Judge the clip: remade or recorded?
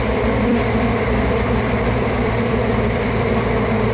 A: remade